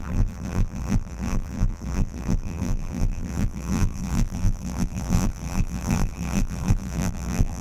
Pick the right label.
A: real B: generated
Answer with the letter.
B